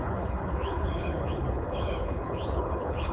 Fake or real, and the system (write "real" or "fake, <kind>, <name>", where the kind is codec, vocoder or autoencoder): fake, codec, HILCodec